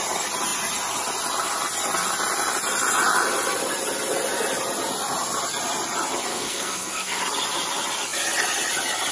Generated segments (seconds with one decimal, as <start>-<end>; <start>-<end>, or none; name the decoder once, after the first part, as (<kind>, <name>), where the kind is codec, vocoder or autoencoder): 6.3-7.2 (codec, SNAC)